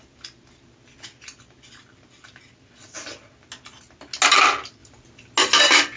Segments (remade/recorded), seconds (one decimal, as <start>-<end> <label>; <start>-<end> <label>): 0.0-6.0 recorded